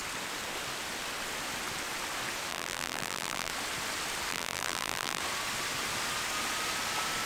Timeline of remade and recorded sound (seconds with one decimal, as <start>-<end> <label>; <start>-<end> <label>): 0.0-2.5 recorded; 2.5-3.5 remade; 3.5-4.3 recorded; 4.3-5.2 remade; 5.2-7.3 recorded